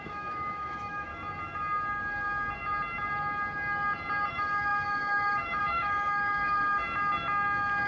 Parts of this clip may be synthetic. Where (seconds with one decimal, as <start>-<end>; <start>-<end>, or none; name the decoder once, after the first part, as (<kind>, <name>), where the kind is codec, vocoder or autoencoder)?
0.0-1.1 (autoencoder, DAC-VAE); 4.3-6.8